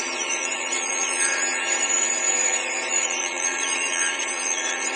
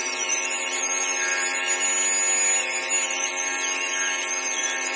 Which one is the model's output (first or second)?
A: first